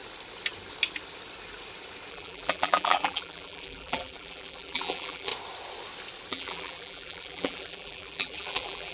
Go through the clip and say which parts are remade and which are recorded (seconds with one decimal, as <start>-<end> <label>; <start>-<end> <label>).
0.0-2.1 recorded; 2.1-5.3 remade; 5.3-6.3 recorded; 6.3-8.9 remade